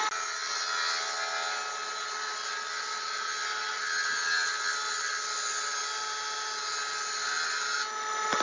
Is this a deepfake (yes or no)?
no